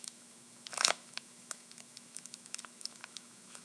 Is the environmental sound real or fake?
fake